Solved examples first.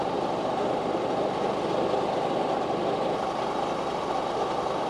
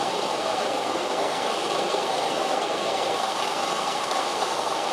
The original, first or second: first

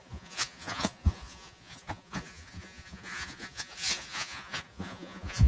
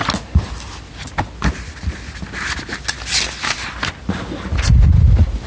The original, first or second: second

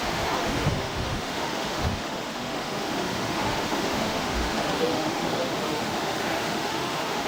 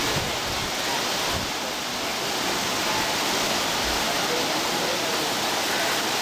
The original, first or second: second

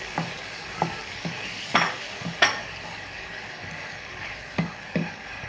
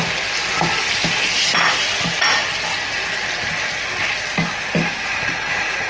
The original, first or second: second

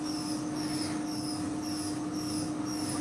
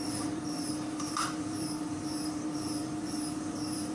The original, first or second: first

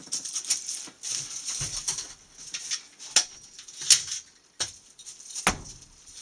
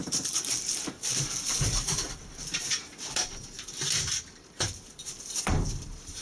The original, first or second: first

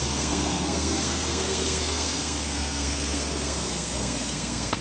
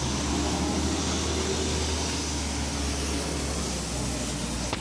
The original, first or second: second